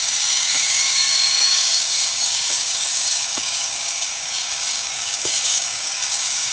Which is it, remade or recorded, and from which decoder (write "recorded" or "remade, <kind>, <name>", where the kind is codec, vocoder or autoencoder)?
remade, codec, DAC